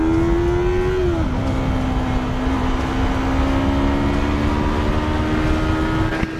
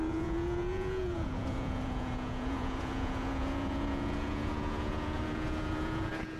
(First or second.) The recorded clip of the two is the first